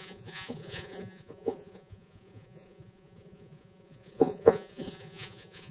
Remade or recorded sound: remade